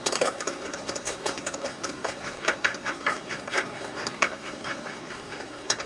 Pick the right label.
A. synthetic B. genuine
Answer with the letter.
A